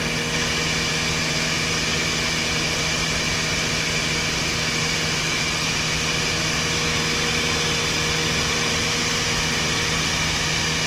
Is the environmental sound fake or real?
real